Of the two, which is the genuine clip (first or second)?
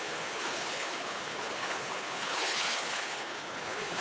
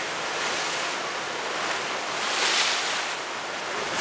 second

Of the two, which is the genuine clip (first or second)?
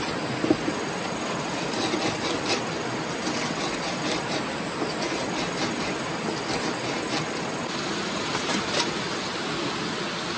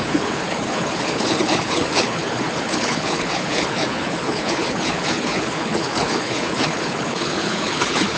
first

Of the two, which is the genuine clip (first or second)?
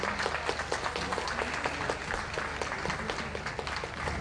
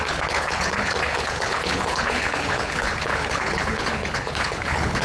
first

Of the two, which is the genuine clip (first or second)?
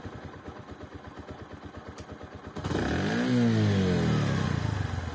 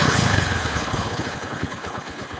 first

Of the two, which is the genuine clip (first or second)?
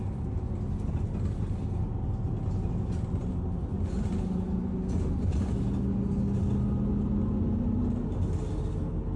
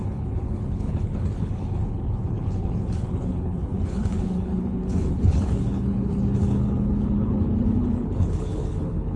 first